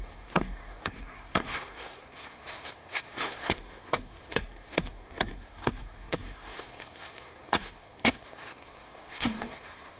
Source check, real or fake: fake